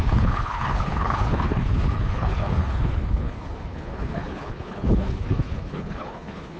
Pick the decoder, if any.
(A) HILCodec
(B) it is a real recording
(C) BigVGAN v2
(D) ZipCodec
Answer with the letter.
A